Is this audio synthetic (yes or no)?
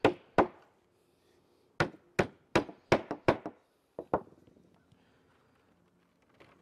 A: no